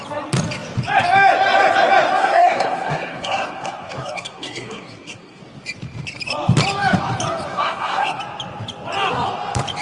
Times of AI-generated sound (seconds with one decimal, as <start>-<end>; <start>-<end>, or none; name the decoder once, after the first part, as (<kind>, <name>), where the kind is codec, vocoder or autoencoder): 2.2-5.4 (codec, SNAC); 7.5-8.2